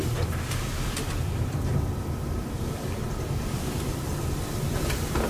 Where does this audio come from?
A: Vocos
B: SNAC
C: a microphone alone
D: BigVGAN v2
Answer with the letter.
D